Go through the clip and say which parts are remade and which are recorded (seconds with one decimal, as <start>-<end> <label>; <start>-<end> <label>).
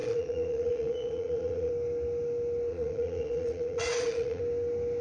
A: 0.0-1.7 remade; 1.7-2.7 recorded; 2.7-4.4 remade; 4.4-5.0 recorded